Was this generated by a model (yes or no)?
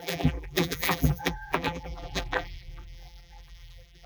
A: yes